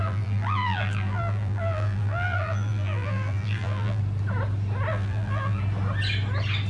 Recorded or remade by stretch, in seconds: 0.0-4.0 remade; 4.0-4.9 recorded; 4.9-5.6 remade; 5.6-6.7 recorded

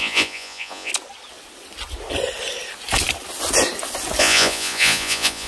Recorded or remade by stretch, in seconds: 0.0-0.9 remade; 0.9-4.2 recorded; 4.2-5.5 remade

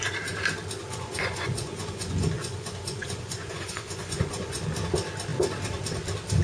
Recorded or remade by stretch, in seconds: 0.0-0.8 recorded; 0.8-4.6 remade; 4.6-6.4 recorded